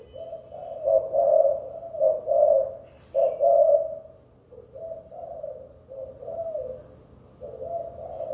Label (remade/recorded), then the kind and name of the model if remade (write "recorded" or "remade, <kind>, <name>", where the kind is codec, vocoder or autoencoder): recorded